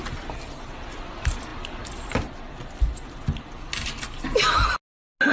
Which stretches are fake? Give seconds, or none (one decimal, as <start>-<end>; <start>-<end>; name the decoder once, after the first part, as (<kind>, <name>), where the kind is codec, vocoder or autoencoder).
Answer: none